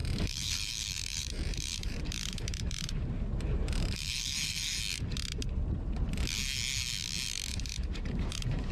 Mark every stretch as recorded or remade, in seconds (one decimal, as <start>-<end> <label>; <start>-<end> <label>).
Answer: 0.0-4.8 remade; 4.8-7.5 recorded; 7.5-8.7 remade

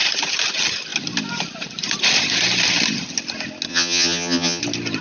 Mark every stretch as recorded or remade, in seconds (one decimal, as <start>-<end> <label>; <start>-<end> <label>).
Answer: 0.0-3.7 recorded; 3.7-4.6 remade; 4.6-5.0 recorded

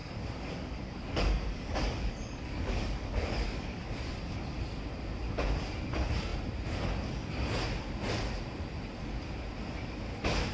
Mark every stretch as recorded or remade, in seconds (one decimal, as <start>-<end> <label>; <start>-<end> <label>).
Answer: 0.0-4.0 remade; 4.0-10.5 recorded